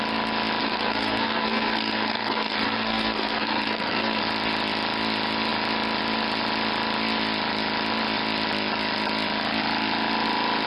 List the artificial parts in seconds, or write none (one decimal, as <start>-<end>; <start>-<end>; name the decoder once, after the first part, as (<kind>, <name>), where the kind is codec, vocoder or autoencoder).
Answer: 0.6-4.2 (codec, SNAC)